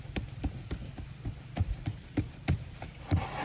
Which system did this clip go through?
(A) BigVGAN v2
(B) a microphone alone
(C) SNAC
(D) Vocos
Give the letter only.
B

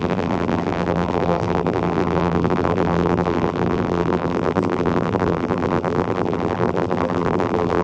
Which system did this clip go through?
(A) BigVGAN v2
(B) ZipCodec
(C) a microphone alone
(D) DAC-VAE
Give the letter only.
A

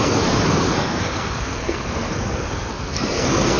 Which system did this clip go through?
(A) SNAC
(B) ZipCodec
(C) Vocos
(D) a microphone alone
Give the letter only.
A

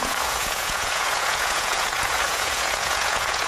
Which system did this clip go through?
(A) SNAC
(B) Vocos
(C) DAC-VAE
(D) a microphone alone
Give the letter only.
B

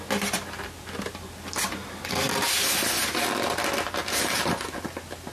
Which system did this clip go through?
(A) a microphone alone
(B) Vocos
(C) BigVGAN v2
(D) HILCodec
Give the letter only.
A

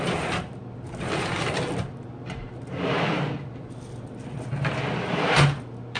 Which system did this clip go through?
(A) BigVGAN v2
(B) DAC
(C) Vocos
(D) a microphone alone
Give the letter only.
D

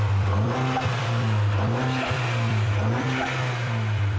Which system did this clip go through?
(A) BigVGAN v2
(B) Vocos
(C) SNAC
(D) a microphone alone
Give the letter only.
A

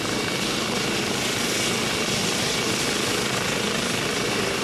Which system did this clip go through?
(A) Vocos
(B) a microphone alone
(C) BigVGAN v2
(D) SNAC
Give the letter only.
B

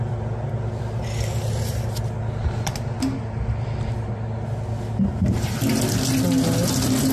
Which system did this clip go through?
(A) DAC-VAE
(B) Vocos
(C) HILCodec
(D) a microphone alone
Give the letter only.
D